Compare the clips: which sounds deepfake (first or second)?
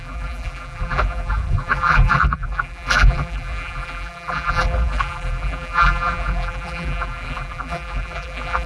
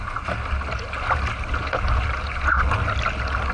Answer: first